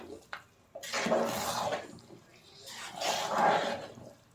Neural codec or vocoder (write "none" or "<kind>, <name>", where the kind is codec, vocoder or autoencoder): none